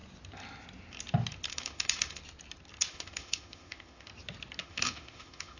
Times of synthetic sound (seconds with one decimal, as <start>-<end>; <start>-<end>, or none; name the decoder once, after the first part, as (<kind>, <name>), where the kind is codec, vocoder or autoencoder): 1.5-2.2 (autoencoder, DAC-VAE); 2.9-4.1; 4.6-5.6